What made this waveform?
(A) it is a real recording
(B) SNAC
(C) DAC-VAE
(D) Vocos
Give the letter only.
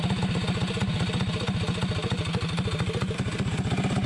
A